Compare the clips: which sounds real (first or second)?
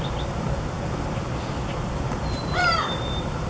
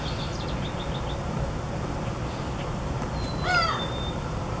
second